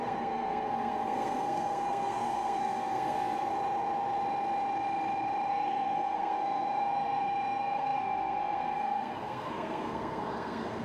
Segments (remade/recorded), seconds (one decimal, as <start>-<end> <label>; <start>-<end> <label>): 0.0-3.5 remade; 3.5-5.5 recorded; 5.5-10.8 remade